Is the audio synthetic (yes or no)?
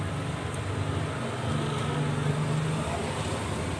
no